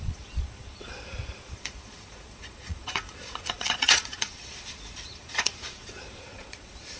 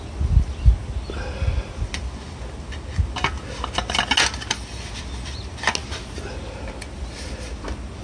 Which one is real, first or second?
second